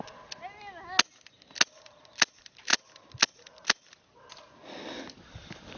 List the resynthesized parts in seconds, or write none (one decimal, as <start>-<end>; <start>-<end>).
none